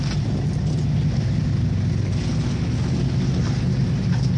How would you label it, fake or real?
real